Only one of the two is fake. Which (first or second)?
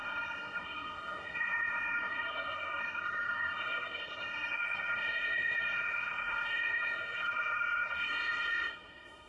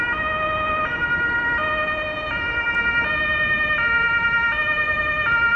first